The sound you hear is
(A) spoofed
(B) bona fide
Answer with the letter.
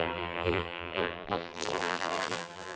A